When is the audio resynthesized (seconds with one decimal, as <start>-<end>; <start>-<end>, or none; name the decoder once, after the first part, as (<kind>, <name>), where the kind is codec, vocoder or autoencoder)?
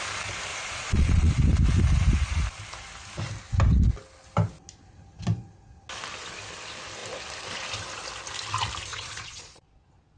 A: 0.5-1.3 (vocoder, Vocos); 8.9-10.2